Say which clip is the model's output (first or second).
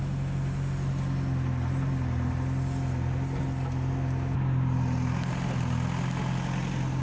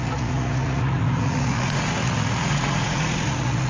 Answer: second